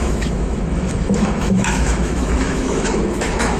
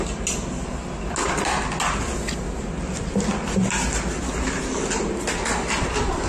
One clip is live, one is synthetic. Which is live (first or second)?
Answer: second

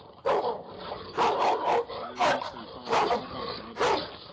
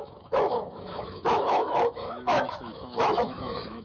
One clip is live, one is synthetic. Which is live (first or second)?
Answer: first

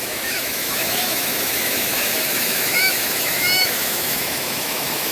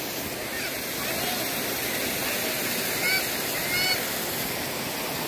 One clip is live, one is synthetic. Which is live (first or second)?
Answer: second